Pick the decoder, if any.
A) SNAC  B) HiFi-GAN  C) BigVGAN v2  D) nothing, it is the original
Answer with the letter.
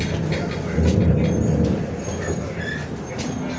D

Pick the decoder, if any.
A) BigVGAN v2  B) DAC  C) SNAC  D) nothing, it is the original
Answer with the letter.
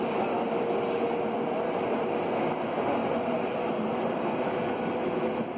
D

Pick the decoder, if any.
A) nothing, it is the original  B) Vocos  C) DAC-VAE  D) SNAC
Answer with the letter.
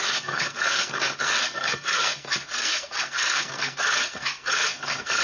D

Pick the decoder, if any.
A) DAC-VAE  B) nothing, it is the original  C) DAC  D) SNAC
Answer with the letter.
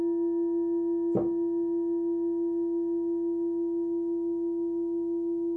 B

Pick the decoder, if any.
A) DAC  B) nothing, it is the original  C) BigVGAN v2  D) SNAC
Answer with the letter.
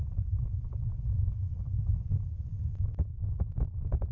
B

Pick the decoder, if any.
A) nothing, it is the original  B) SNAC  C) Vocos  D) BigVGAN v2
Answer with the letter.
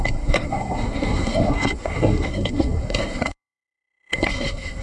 B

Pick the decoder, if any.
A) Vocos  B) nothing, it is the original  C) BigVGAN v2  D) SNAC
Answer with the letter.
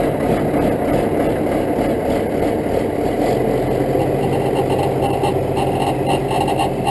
B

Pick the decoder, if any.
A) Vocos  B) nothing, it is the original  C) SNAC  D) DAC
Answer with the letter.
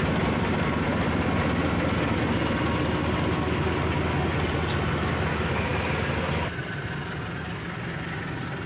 B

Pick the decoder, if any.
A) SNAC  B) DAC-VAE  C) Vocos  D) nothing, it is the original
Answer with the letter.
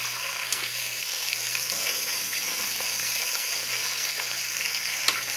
A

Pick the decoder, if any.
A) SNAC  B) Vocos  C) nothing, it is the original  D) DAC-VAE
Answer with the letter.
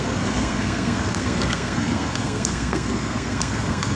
A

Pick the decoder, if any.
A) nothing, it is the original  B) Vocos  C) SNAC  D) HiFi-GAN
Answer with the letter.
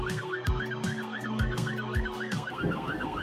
C